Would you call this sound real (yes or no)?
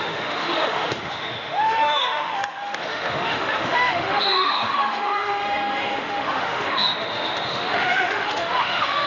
no